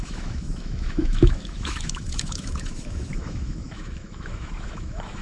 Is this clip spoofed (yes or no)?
yes